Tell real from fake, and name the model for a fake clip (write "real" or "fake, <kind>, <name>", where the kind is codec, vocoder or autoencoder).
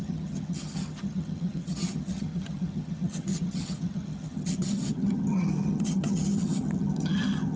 fake, vocoder, HiFi-GAN